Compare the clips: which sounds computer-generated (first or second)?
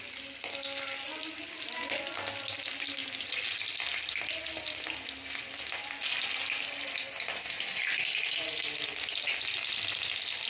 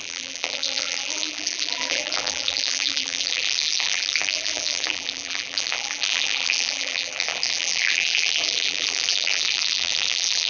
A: second